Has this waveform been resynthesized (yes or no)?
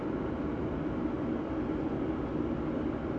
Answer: no